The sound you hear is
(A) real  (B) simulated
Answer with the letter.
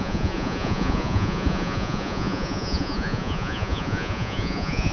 B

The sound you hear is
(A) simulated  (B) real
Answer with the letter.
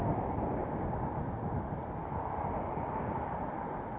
B